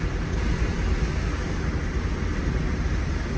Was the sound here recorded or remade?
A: recorded